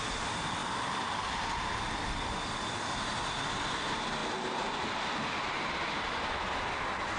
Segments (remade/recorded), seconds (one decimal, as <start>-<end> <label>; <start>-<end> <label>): 0.0-7.2 recorded